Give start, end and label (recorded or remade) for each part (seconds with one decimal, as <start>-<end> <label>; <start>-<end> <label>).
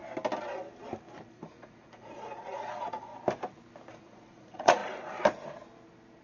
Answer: 0.0-1.3 recorded; 1.3-3.1 remade; 3.1-3.9 recorded; 3.9-4.8 remade; 4.8-6.2 recorded